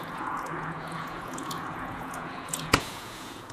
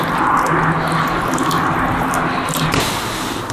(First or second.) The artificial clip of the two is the first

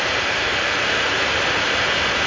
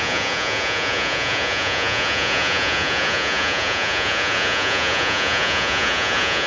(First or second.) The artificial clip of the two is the second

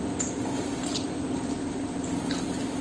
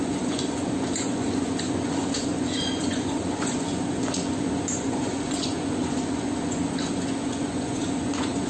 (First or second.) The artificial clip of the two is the second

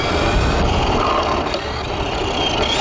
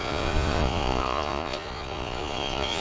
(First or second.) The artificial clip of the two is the second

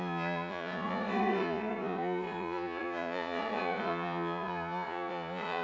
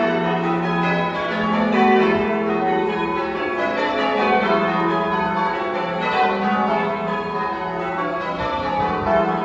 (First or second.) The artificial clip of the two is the first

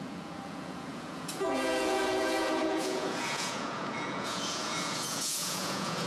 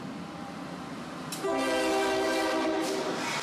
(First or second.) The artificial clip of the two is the first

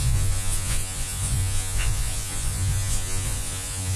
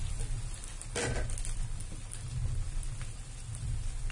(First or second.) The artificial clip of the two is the first